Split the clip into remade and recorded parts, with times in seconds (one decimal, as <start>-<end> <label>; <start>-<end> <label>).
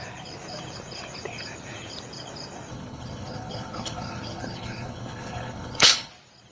0.0-2.7 recorded; 2.7-6.1 remade; 6.1-6.5 recorded